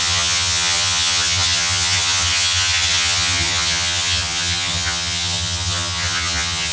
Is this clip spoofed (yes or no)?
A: yes